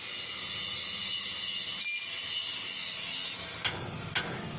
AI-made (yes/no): no